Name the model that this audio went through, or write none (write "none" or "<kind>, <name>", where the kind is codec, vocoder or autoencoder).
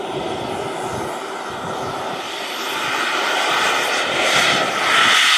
none